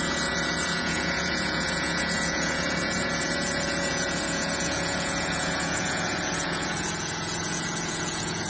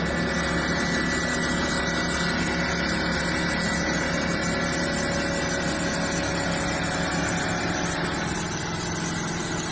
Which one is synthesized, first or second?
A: first